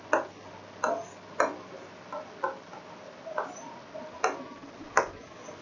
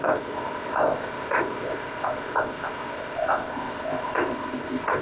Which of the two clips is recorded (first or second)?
first